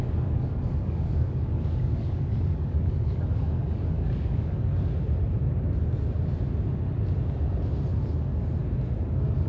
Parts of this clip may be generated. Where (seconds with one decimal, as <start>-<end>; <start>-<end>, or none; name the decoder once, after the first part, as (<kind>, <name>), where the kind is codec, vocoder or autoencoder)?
0.0-4.7 (codec, DAC); 9.1-9.5